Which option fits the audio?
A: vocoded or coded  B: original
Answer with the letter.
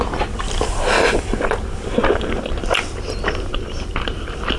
A